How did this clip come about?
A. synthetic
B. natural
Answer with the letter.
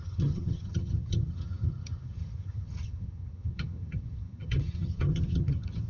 A